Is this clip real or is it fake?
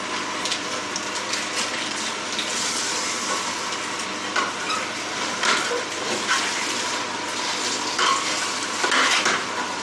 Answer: fake